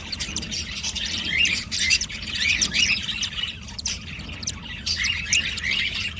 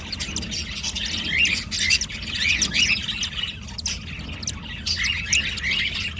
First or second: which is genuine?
second